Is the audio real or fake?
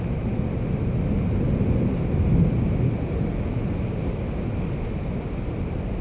real